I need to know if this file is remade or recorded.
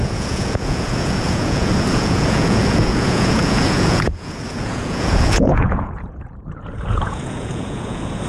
remade